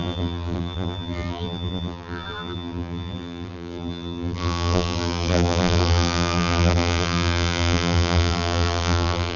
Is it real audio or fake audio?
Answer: fake